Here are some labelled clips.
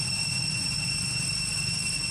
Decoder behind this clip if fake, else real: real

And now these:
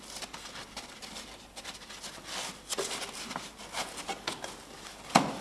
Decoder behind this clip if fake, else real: real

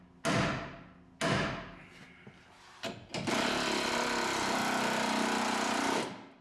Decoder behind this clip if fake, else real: real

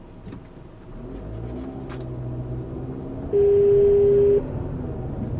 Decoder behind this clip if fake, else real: real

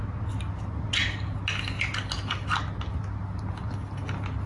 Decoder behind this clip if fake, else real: real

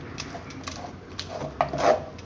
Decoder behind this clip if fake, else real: real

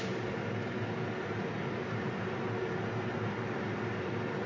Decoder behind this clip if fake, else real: real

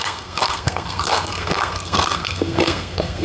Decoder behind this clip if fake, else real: fake, codec, SNAC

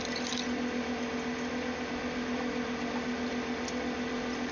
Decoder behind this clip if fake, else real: real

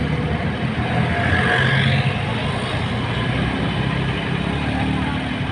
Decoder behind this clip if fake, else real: real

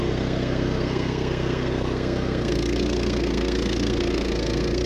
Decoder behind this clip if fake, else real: fake, codec, SNAC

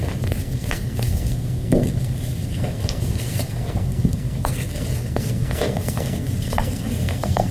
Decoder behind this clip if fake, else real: fake, codec, SNAC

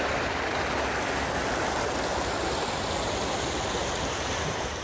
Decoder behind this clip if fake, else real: real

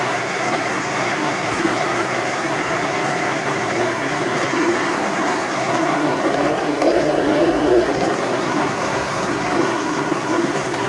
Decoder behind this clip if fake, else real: fake, codec, SNAC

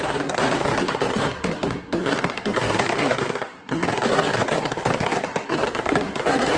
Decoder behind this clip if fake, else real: fake, codec, SNAC